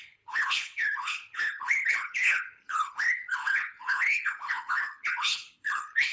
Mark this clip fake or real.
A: fake